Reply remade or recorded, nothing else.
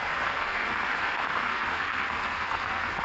remade